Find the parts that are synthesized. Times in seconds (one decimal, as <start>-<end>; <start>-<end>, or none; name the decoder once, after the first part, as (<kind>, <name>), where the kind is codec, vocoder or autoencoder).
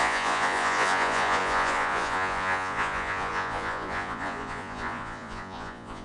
0.0-6.0 (vocoder, Vocos)